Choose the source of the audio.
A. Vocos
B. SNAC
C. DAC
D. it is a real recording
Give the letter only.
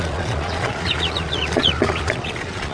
A